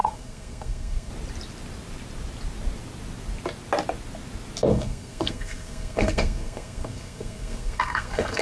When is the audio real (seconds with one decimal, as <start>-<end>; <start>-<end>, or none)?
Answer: 1.1-4.7